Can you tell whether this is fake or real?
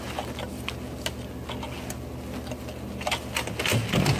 real